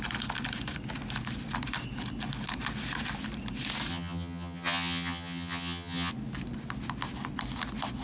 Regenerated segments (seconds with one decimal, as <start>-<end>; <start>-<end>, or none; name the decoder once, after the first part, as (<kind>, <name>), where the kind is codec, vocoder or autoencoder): 3.9-6.1 (vocoder, HiFi-GAN)